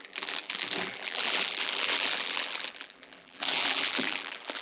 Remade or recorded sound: remade